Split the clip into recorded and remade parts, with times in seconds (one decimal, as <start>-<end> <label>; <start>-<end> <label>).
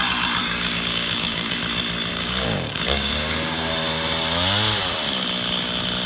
0.0-0.4 recorded; 0.4-1.6 remade; 1.6-2.1 recorded; 2.1-3.7 remade; 3.7-6.1 recorded